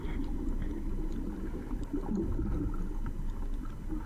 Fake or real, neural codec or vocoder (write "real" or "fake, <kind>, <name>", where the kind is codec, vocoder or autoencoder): real